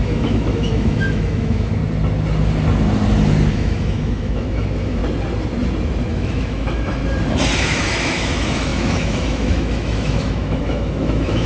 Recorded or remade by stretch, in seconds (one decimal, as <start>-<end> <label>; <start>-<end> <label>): 0.0-1.8 remade; 1.8-3.5 recorded; 3.5-5.0 remade; 5.0-6.1 recorded; 6.1-7.0 remade; 7.0-7.6 recorded; 7.6-11.5 remade